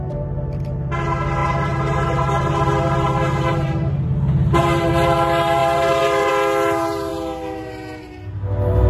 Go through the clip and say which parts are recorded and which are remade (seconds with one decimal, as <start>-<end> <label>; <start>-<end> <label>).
0.0-1.4 recorded; 1.4-4.9 remade; 4.9-5.6 recorded; 5.6-6.3 remade; 6.3-8.9 recorded